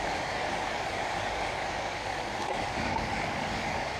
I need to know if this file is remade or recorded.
remade